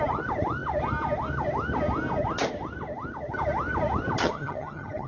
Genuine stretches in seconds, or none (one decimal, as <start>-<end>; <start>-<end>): 0.0-4.2